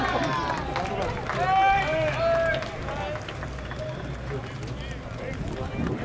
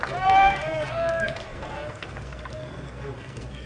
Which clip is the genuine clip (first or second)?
first